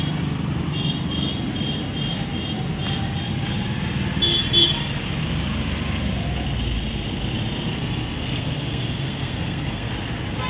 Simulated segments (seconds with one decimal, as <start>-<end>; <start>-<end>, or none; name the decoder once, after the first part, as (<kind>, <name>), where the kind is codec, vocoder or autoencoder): 7.8-9.9 (codec, SNAC)